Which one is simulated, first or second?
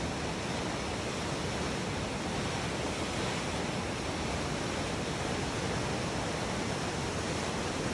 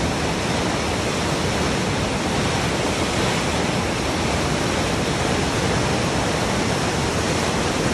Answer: second